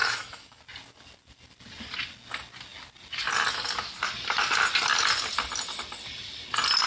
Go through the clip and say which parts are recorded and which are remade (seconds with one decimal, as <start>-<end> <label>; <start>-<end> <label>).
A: 0.0-0.6 remade; 0.6-6.9 recorded